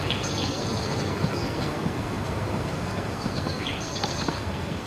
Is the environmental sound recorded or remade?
remade